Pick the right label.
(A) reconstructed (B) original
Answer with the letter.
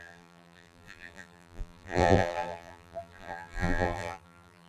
A